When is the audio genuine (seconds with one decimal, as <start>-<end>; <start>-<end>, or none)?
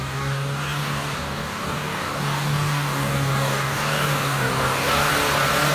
5.1-5.7